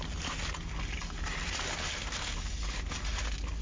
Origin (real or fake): real